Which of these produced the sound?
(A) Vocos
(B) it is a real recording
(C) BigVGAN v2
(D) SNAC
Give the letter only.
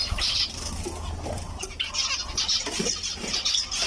B